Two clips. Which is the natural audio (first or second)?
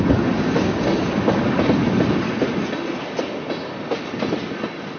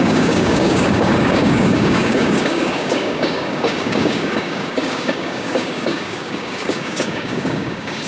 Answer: first